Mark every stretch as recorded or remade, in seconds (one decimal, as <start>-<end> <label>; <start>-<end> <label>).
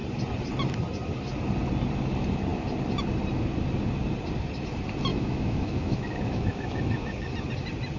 0.0-5.1 recorded; 5.1-7.3 remade; 7.3-8.0 recorded